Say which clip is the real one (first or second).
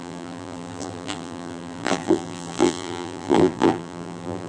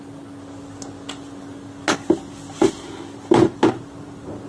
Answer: second